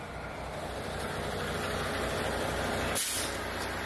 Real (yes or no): yes